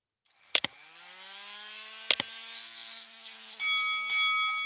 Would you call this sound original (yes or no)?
yes